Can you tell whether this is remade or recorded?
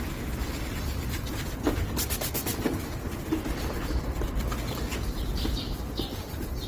recorded